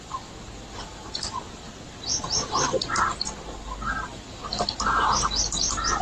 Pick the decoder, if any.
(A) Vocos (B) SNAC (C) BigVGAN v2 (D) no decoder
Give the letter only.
D